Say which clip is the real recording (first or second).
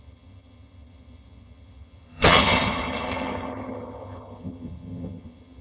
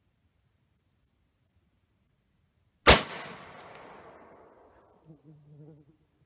second